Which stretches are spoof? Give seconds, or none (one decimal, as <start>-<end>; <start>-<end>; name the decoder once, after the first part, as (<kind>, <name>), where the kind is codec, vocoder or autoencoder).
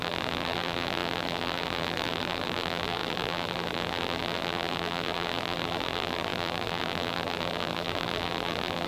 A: 0.0-8.9 (vocoder, BigVGAN v2)